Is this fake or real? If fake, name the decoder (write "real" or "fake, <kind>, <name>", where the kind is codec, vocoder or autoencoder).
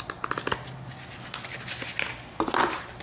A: real